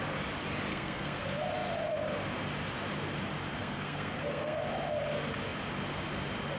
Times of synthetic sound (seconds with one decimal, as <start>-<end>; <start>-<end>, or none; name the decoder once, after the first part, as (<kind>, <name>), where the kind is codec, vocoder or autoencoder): 0.7-1.2 (codec, SNAC); 3.6-4.6